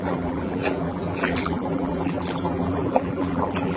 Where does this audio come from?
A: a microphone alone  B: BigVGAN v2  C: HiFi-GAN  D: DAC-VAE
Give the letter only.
B